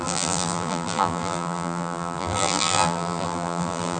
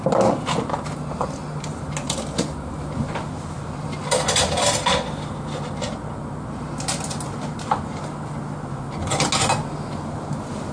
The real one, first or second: second